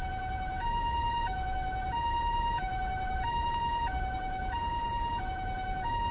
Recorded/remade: remade